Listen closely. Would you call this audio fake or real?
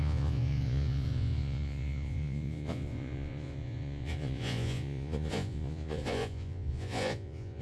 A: fake